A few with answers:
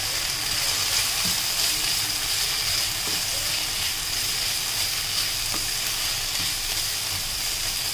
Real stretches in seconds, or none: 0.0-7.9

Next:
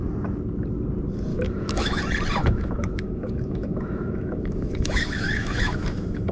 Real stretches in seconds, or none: 0.0-1.3; 2.0-2.4

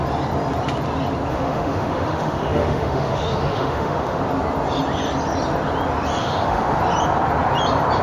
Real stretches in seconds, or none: 0.0-1.3; 4.2-6.2; 6.8-8.0